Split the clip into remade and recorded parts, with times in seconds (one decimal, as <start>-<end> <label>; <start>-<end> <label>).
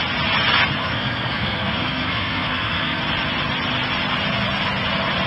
0.0-0.8 recorded; 0.8-3.0 remade; 3.0-5.3 recorded